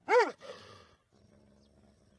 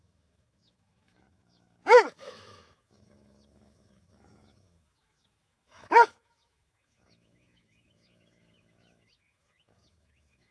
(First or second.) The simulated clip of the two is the second